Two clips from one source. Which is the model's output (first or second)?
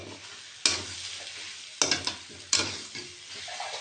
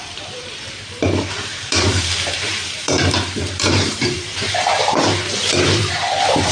second